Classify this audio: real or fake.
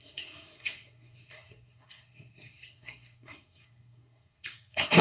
fake